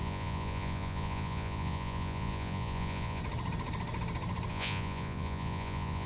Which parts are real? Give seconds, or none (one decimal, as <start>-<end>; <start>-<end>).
3.2-4.5